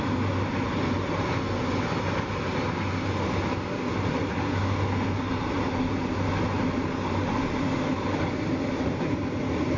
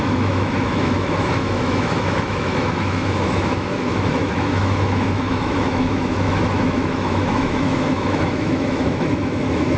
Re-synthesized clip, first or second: second